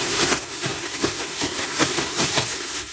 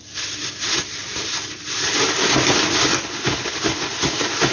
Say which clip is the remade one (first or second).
first